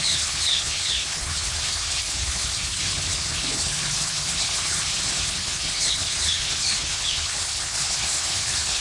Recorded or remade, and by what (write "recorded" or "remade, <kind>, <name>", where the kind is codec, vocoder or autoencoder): remade, codec, HILCodec